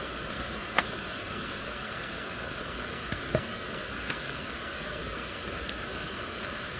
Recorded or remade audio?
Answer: remade